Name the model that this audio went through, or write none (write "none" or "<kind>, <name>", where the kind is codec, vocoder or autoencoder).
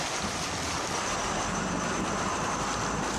none